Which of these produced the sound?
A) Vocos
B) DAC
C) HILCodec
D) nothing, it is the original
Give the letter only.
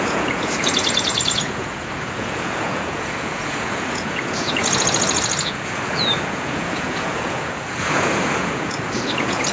A